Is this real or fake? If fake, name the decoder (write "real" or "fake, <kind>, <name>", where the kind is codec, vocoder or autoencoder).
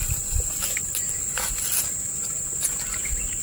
real